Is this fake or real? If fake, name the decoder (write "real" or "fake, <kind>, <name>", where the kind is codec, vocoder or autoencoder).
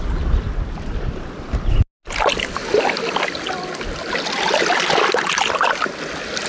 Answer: real